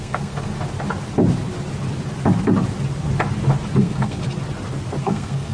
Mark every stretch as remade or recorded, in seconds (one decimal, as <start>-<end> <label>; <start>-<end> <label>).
0.0-0.5 remade; 0.5-3.8 recorded; 3.8-4.2 remade; 4.2-5.0 recorded; 5.0-5.5 remade